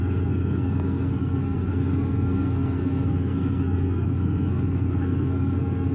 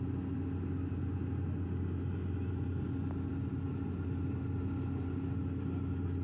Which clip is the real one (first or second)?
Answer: second